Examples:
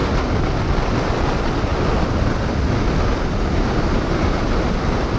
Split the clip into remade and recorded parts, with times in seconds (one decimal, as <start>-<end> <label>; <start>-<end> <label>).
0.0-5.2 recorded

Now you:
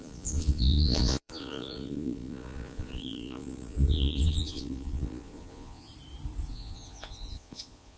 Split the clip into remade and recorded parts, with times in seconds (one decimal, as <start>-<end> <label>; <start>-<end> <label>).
0.0-5.9 remade; 5.9-6.5 recorded; 6.5-8.0 remade

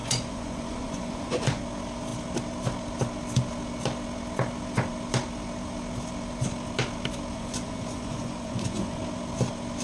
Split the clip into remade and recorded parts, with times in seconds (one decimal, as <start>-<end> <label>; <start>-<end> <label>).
0.0-1.6 remade; 1.6-7.3 recorded; 7.3-9.0 remade; 9.0-9.8 recorded

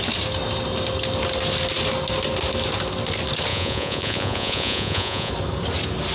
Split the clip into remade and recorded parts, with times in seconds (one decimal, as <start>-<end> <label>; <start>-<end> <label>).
0.0-3.5 recorded; 3.5-5.3 remade; 5.3-6.1 recorded

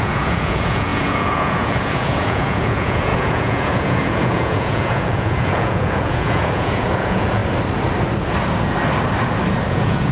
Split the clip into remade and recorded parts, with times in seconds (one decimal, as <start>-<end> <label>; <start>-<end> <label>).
0.0-7.4 remade; 7.4-9.7 recorded; 9.7-10.1 remade

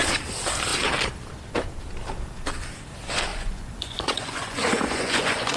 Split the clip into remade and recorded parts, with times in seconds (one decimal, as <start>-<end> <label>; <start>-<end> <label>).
0.0-3.3 recorded; 3.3-5.6 remade

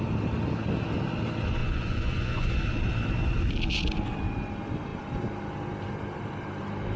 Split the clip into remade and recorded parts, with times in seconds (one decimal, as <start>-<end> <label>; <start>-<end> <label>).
0.0-1.6 recorded; 1.6-2.5 remade; 2.5-7.0 recorded

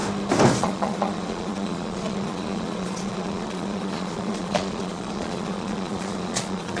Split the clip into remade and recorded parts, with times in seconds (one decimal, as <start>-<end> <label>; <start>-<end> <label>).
0.0-0.6 recorded; 0.6-6.8 remade